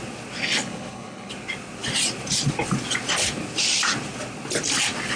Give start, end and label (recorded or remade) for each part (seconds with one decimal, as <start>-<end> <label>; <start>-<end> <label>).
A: 0.0-0.4 recorded; 0.4-1.3 remade; 1.3-5.2 recorded